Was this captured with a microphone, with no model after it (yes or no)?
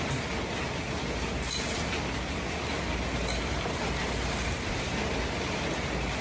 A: yes